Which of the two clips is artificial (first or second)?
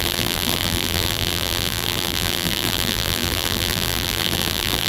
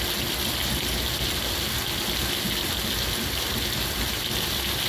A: first